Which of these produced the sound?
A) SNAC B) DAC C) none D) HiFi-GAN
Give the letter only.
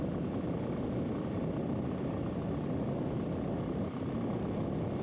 C